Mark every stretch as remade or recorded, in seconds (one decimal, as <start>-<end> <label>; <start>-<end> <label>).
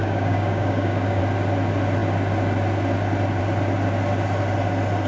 0.0-1.2 remade; 1.2-5.1 recorded